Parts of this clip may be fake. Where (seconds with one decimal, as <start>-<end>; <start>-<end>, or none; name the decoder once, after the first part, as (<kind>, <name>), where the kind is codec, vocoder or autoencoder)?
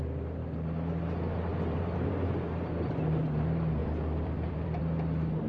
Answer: 1.5-2.1 (vocoder, BigVGAN v2); 3.8-4.8